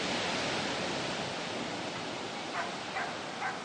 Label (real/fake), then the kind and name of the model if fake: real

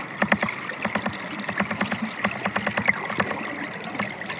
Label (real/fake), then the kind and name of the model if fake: real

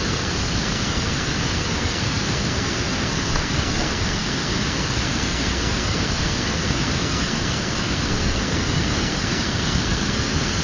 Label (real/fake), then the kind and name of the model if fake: fake, codec, SNAC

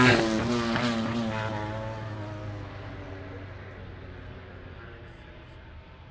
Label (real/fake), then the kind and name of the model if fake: real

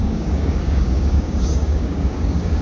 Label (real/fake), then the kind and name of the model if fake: fake, codec, DAC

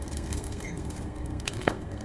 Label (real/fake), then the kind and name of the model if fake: fake, codec, SNAC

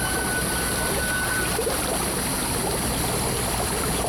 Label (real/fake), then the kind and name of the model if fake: real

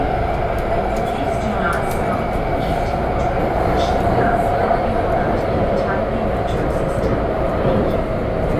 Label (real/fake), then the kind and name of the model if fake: real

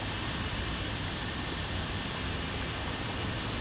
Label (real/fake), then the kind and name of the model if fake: fake, vocoder, BigVGAN v2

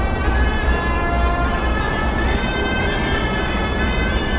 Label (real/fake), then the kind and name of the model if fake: fake, vocoder, BigVGAN v2